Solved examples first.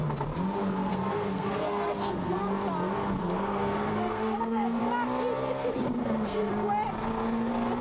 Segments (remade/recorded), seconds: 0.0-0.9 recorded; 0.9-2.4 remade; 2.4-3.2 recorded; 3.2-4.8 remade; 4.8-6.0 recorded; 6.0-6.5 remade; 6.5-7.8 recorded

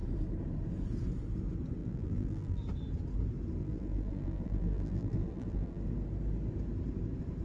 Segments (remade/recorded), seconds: 0.0-1.8 recorded; 1.8-2.6 remade; 2.6-3.6 recorded; 3.6-5.8 remade; 5.8-7.4 recorded

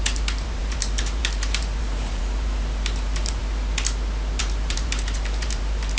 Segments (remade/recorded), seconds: 0.0-3.4 remade; 3.4-4.4 recorded; 4.4-6.0 remade